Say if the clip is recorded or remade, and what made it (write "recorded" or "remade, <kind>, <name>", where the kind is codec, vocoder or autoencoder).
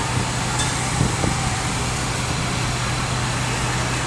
recorded